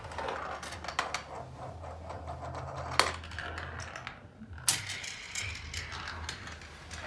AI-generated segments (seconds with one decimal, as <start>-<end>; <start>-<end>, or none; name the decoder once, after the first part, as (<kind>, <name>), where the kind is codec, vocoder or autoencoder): 4.7-5.4 (vocoder, BigVGAN v2)